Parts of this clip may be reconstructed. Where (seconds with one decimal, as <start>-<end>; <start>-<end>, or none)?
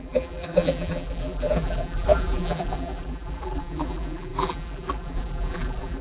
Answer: 0.0-6.0